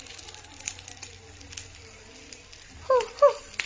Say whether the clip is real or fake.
real